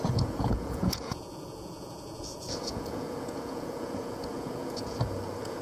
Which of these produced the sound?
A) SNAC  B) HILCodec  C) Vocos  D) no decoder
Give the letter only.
C